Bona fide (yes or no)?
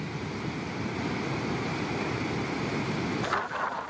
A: yes